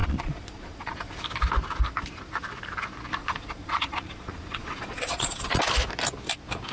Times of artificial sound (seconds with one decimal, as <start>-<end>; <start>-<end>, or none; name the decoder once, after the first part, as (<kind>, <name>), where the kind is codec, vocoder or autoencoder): 0.0-1.2 (vocoder, Vocos); 3.2-5.6